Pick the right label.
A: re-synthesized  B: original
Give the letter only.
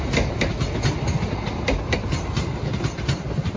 B